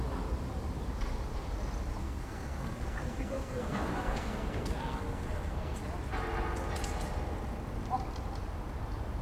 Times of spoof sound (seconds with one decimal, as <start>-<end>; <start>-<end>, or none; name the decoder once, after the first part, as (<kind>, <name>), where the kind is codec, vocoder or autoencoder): 2.0-5.8 (codec, SNAC)